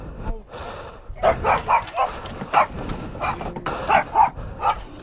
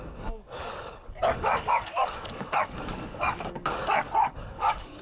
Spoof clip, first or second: second